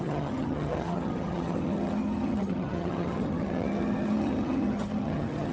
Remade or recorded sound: remade